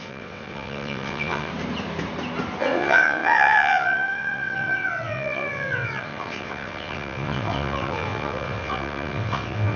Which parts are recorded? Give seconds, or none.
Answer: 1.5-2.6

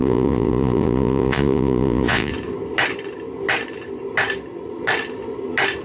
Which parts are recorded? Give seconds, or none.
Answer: 2.3-5.8